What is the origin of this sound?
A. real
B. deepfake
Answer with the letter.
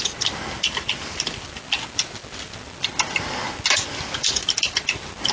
A